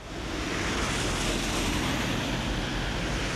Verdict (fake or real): real